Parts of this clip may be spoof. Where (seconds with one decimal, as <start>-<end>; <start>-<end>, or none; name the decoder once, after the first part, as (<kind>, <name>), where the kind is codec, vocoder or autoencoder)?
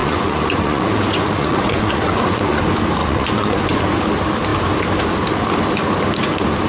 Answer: 0.0-2.6 (vocoder, Vocos); 3.0-4.0